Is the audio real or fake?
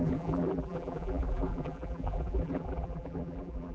fake